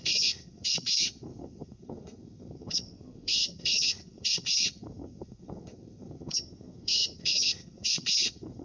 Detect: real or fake fake